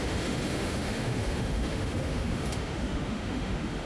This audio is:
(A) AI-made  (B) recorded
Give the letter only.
A